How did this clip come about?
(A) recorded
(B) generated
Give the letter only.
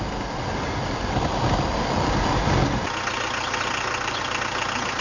A